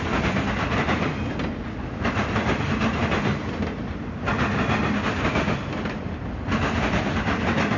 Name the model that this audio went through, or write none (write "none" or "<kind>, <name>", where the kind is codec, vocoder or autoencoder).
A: none